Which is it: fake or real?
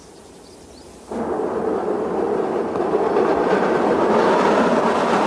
real